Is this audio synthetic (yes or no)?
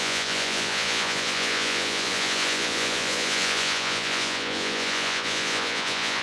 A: yes